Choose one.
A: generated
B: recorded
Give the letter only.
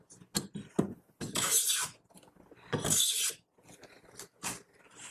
B